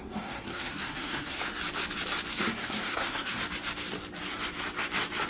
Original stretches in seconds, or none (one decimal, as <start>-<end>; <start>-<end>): 1.4-2.3; 3.4-5.3